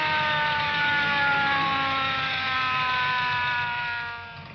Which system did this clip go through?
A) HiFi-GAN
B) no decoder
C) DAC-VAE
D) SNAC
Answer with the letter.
B